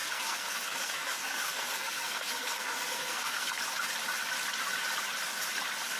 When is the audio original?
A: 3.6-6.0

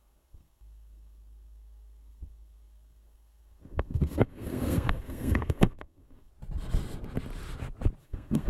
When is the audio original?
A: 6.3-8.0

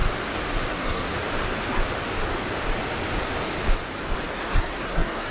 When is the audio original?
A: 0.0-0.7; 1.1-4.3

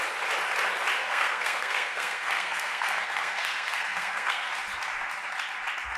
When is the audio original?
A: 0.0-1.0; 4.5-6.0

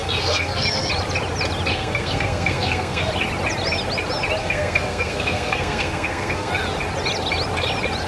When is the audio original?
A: 0.9-1.7; 3.1-4.4; 6.5-8.1

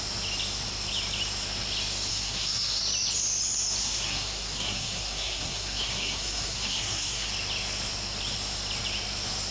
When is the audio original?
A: 0.0-2.1; 2.8-3.8; 7.3-9.5